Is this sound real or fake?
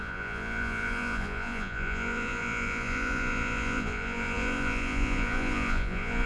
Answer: fake